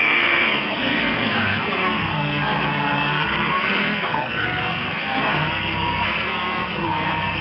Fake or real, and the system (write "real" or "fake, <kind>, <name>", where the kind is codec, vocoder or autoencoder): fake, codec, SNAC